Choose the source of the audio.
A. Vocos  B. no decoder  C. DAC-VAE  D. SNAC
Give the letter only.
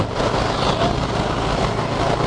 B